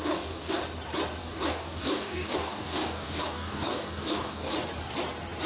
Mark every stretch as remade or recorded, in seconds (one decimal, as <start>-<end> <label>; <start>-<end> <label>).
0.0-0.6 remade; 0.6-1.2 recorded; 1.2-4.5 remade; 4.5-5.5 recorded